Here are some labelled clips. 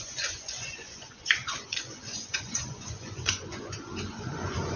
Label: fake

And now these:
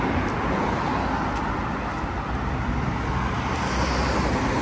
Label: real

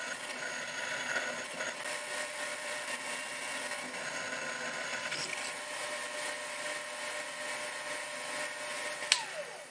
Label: real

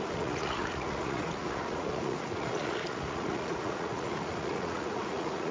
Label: fake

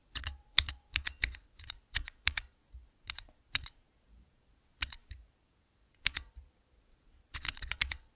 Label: fake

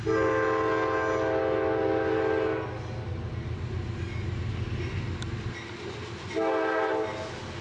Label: real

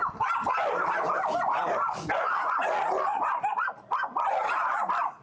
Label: real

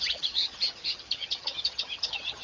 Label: fake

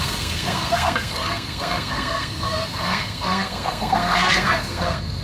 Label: fake